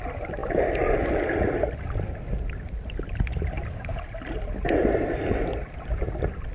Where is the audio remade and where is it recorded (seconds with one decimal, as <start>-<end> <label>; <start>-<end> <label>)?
0.0-6.5 recorded